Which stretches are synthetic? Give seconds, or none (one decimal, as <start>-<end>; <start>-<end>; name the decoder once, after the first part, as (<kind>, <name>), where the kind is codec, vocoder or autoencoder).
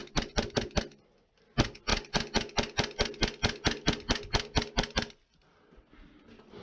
0.0-0.8 (vocoder, BigVGAN v2)